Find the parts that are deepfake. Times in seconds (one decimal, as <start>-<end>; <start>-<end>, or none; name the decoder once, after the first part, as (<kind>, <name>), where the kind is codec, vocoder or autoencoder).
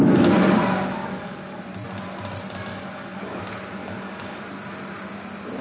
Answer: 1.0-1.6 (codec, DAC); 2.7-3.4; 3.8-4.4